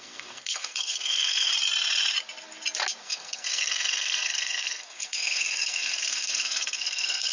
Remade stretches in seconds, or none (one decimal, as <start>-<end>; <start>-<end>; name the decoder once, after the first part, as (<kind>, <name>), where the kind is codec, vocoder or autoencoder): 0.0-1.5 (codec, SNAC); 3.0-7.3